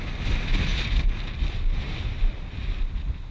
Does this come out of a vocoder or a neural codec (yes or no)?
no